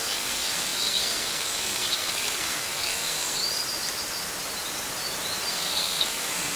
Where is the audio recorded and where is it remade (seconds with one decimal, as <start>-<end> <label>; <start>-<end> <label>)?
0.0-3.4 remade; 3.4-5.5 recorded; 5.5-6.6 remade